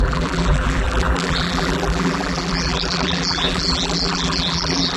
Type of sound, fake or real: fake